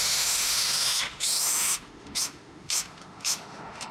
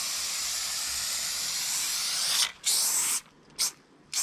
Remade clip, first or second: first